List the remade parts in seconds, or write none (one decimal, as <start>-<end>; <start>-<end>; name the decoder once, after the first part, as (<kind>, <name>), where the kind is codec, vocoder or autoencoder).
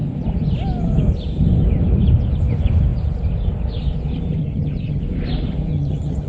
4.4-5.0 (vocoder, HiFi-GAN); 5.7-6.3